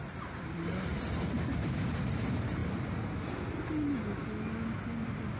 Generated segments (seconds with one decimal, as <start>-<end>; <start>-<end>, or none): 0.0-0.9; 1.6-2.6